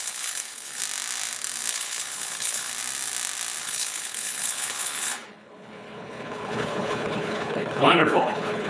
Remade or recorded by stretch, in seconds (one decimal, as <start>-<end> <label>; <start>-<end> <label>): 0.0-0.8 remade; 0.8-1.7 recorded; 1.7-2.7 remade; 2.7-3.6 recorded; 3.6-8.7 remade